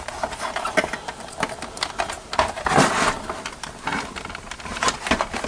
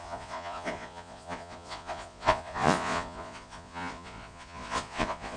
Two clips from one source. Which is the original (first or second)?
first